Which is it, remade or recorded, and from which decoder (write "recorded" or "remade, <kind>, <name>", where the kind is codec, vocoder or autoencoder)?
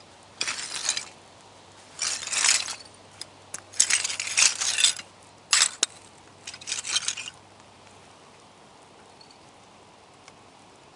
recorded